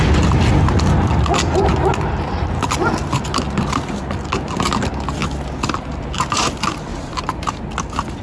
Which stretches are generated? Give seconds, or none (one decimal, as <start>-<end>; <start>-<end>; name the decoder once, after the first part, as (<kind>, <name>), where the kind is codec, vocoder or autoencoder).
6.9-7.6 (vocoder, BigVGAN v2)